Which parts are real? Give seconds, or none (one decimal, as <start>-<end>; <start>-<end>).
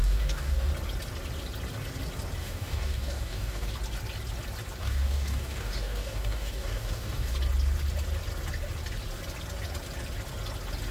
0.7-2.4; 3.7-4.8; 7.3-10.9